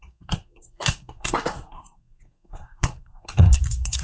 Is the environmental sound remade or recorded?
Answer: remade